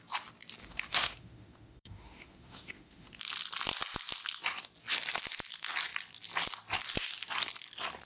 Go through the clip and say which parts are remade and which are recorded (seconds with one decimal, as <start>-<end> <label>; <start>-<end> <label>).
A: 0.0-0.6 recorded; 0.6-3.2 remade; 3.2-8.1 recorded